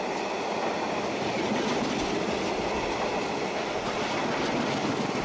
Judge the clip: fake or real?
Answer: real